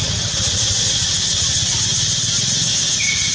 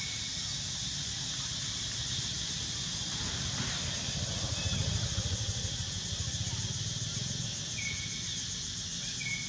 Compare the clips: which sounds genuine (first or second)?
second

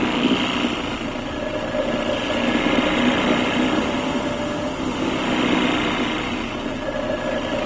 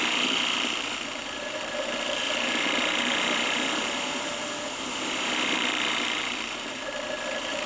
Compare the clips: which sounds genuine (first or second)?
first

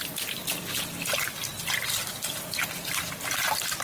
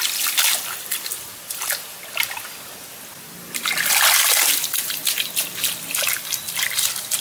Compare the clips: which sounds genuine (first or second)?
second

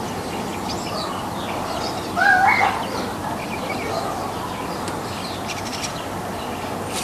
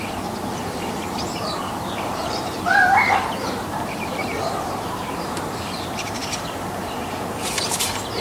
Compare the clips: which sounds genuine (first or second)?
first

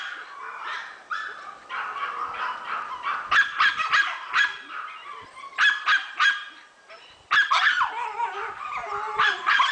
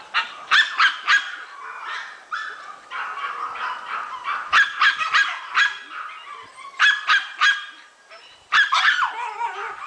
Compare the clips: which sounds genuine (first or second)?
second